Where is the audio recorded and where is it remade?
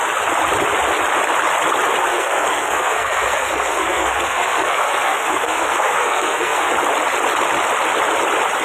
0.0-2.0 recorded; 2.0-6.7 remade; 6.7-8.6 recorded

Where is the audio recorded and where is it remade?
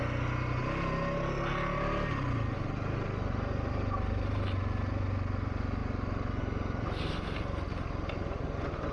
0.0-8.9 recorded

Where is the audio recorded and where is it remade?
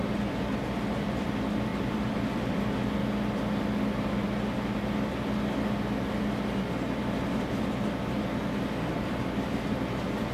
0.0-1.7 recorded; 1.7-2.6 remade; 2.6-10.3 recorded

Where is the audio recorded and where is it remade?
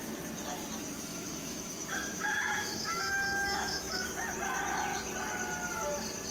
0.0-1.1 recorded; 1.1-4.1 remade; 4.1-6.3 recorded